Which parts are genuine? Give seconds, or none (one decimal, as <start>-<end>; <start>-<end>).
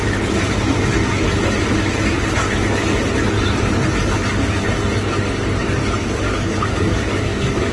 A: 0.0-6.0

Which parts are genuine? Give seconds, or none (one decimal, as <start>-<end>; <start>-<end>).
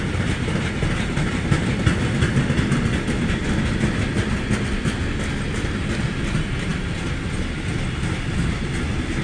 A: 0.0-9.2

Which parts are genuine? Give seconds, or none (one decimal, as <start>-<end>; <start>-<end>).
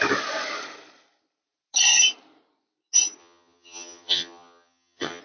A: 0.0-3.2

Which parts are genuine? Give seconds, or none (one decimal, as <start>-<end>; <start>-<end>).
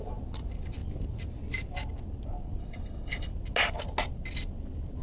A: 0.0-2.6; 3.3-5.0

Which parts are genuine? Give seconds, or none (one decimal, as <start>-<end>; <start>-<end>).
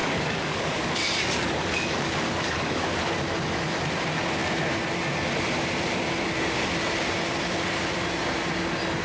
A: 3.1-9.0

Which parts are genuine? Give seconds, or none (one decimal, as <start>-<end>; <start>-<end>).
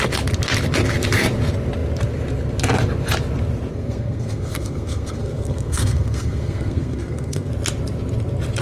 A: 0.0-3.7; 7.5-8.6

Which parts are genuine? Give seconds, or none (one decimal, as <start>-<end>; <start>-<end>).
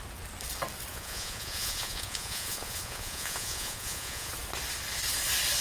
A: 0.0-0.9; 4.3-5.6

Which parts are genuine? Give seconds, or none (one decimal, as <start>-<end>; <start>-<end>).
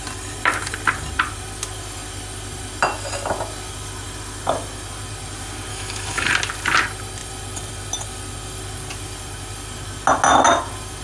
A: 0.0-5.7; 6.3-11.0